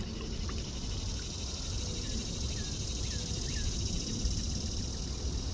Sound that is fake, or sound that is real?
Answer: real